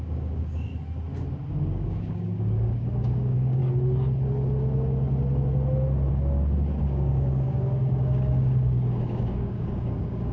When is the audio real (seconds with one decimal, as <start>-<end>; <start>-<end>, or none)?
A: 0.7-1.5; 3.6-6.8